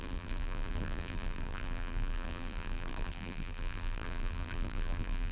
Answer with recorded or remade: remade